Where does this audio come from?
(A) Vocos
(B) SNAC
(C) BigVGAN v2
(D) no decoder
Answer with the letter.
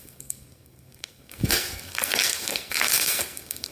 B